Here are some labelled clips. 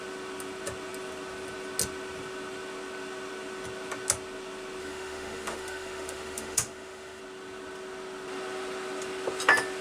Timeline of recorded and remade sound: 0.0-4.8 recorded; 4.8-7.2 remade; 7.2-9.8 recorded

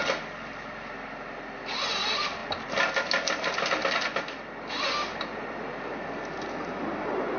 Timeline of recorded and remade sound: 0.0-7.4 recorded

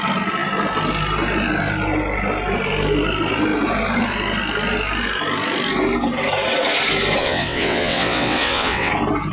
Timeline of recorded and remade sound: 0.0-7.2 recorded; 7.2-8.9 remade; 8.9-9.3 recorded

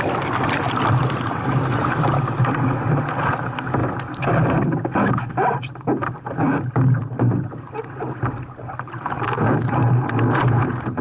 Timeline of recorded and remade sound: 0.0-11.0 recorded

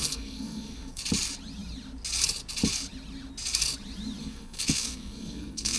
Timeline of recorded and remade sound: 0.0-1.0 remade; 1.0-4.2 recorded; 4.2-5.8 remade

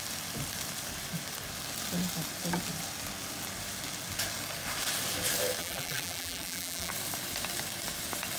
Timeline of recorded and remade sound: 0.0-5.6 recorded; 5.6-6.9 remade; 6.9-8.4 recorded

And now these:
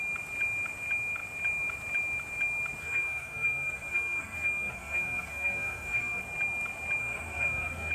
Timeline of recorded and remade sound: 0.0-2.8 recorded; 2.8-6.2 remade; 6.2-7.0 recorded; 7.0-7.9 remade

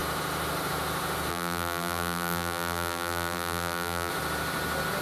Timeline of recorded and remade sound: 0.0-1.3 recorded; 1.3-4.1 remade; 4.1-5.0 recorded